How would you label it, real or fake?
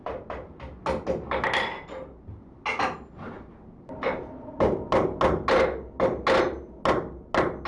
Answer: real